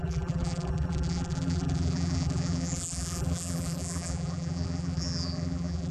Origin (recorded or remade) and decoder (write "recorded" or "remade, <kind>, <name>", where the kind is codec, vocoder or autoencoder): remade, vocoder, BigVGAN v2